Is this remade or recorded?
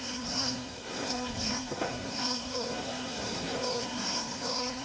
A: remade